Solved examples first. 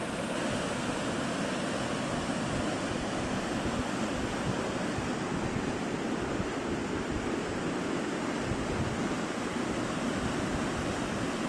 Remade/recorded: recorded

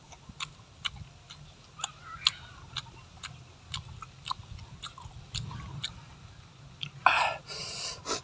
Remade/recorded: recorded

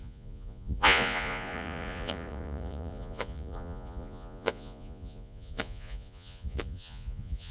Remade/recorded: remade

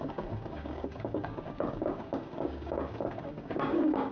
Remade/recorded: remade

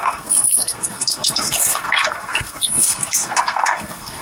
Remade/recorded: remade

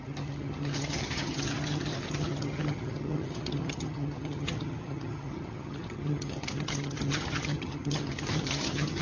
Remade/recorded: remade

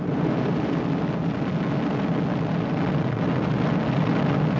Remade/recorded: recorded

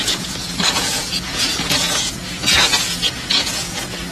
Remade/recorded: remade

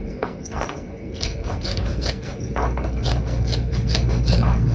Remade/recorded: remade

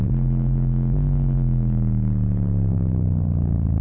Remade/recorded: recorded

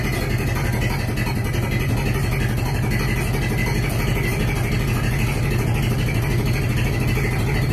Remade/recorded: recorded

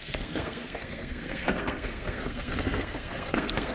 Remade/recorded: remade